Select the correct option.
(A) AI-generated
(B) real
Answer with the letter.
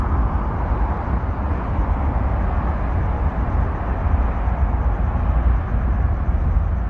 B